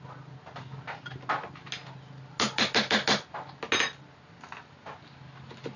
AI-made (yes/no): no